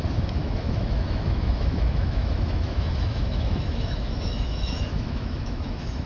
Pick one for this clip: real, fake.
fake